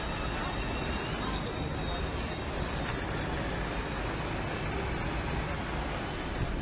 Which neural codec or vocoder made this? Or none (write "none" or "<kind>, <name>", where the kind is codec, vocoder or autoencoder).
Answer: none